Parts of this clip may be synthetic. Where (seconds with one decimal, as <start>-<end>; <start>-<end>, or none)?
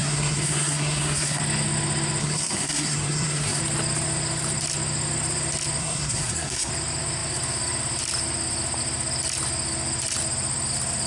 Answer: 0.0-1.4; 2.2-3.6; 5.8-6.7